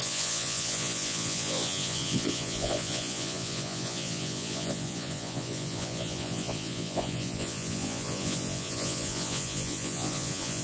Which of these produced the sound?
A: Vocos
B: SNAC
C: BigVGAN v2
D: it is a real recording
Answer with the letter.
A